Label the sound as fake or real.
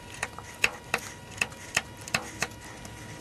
real